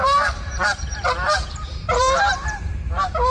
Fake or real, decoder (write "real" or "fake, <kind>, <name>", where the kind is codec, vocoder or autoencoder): fake, vocoder, BigVGAN v2